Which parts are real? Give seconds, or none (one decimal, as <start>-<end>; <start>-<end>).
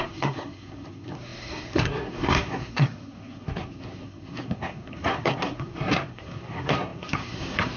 none